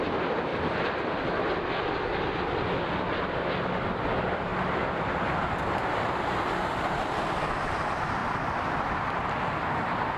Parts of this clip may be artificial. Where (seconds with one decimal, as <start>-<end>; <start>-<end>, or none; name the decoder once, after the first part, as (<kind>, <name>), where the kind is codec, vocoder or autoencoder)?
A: 0.5-2.4 (vocoder, BigVGAN v2); 4.5-5.6; 8.2-8.9